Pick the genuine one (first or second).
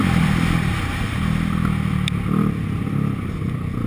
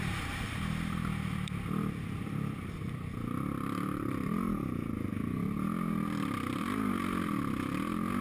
first